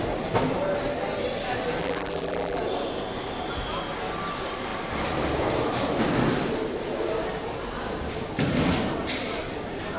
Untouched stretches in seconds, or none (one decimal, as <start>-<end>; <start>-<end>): 0.0-1.8; 2.6-10.0

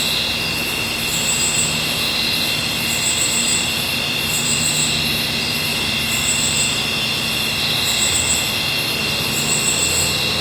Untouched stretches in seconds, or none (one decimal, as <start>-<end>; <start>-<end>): 0.0-1.1; 4.7-5.7; 8.1-10.4